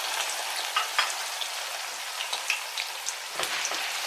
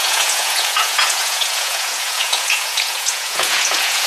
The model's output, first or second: second